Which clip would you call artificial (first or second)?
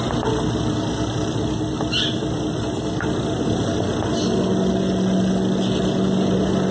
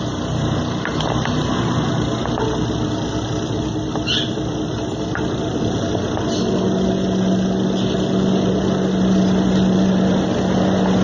second